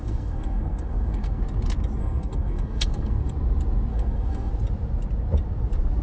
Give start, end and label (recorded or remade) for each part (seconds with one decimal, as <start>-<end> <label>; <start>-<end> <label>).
0.0-1.4 remade; 1.4-2.0 recorded; 2.0-3.3 remade; 3.3-3.9 recorded; 3.9-4.5 remade; 4.5-6.0 recorded